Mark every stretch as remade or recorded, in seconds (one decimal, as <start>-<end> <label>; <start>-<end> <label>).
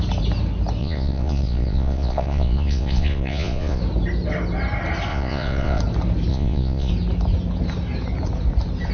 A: 0.0-0.8 recorded; 0.8-3.8 remade; 3.8-5.1 recorded; 5.1-5.8 remade; 5.8-6.3 recorded; 6.3-6.9 remade; 6.9-8.9 recorded